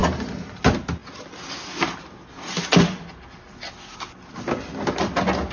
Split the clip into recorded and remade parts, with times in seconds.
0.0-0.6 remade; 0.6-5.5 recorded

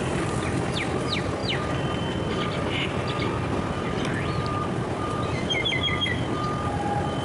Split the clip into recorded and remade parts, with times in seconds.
0.0-4.5 recorded; 4.5-5.8 remade; 5.8-7.2 recorded

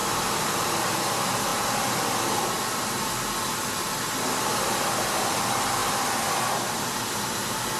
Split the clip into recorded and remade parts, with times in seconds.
0.0-1.0 remade; 1.0-7.8 recorded

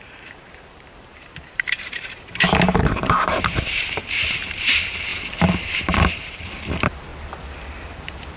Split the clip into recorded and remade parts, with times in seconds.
0.0-7.1 remade; 7.1-8.0 recorded; 8.0-8.4 remade

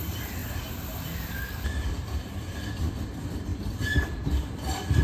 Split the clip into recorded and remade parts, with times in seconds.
0.0-0.4 remade; 0.4-1.1 recorded; 1.1-5.0 remade